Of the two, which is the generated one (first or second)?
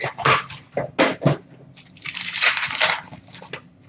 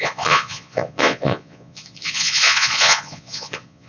second